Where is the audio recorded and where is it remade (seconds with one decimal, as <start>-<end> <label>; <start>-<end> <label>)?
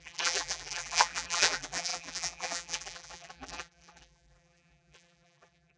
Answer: 0.0-5.8 remade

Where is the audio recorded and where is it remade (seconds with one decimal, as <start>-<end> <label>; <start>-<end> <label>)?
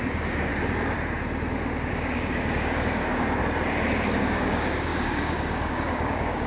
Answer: 0.0-0.5 remade; 0.5-1.9 recorded; 1.9-3.4 remade; 3.4-4.2 recorded; 4.2-6.5 remade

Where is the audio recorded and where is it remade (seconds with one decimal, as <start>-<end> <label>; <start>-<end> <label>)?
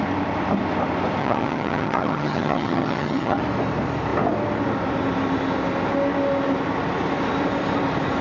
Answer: 0.0-1.2 recorded; 1.2-3.4 remade; 3.4-8.2 recorded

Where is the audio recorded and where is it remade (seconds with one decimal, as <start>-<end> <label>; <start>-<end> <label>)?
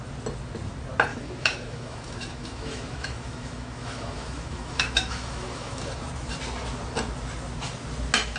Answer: 0.0-1.1 recorded; 1.1-5.9 remade; 5.9-8.4 recorded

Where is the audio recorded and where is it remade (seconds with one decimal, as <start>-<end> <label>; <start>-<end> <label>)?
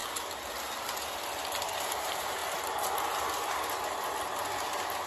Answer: 0.0-1.8 recorded; 1.8-2.4 remade; 2.4-5.1 recorded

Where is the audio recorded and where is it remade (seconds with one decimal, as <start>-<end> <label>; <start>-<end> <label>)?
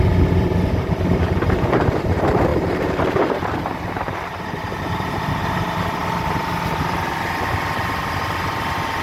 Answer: 0.0-6.0 remade; 6.0-9.0 recorded